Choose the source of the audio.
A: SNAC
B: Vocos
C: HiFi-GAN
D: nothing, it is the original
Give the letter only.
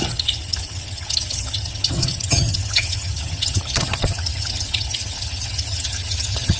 C